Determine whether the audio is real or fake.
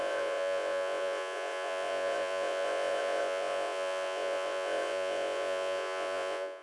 fake